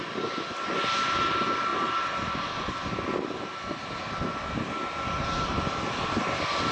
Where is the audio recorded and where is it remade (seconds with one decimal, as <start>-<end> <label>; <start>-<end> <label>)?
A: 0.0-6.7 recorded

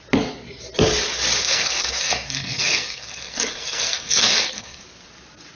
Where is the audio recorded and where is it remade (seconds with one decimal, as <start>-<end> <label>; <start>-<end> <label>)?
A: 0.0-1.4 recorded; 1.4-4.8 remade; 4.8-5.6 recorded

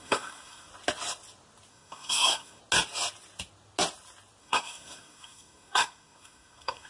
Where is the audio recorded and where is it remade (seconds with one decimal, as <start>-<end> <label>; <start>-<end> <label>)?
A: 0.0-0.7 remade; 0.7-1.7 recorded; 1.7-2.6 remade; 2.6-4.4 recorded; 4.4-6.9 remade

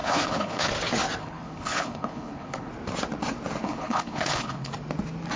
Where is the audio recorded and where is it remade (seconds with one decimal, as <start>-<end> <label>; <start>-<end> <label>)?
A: 0.0-0.7 remade; 0.7-1.2 recorded; 1.2-2.7 remade; 2.7-3.6 recorded; 3.6-4.7 remade; 4.7-5.4 recorded